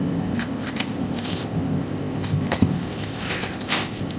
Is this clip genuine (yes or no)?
no